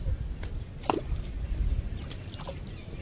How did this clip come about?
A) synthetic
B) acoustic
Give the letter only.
B